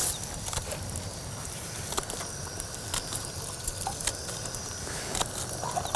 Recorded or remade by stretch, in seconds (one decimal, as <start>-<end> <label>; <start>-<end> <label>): 0.0-6.0 recorded